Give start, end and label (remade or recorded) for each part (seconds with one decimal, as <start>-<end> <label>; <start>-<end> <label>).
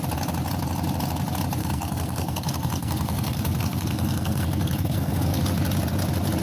0.0-1.6 recorded; 1.6-5.4 remade; 5.4-6.4 recorded